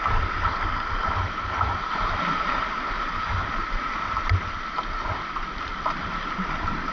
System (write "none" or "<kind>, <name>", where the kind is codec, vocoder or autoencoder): none